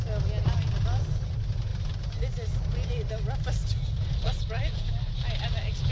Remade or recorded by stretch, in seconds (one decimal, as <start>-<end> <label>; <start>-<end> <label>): 0.0-5.9 recorded

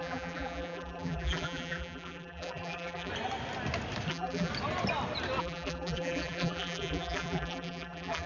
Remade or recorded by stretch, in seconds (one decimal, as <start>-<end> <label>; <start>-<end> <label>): 0.0-3.1 remade; 3.1-4.1 recorded; 4.1-4.5 remade; 4.5-5.4 recorded; 5.4-8.3 remade

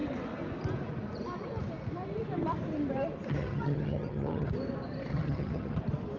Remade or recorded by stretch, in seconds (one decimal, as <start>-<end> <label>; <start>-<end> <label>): 0.0-3.3 recorded; 3.3-4.5 remade; 4.5-5.1 recorded; 5.1-5.8 remade; 5.8-6.2 recorded

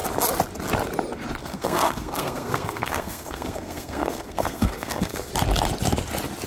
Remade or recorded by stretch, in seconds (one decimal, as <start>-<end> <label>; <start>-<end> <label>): 0.0-1.4 recorded; 1.4-5.3 remade; 5.3-6.5 recorded

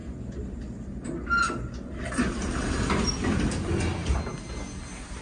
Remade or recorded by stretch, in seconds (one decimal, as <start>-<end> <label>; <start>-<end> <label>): 0.0-5.2 recorded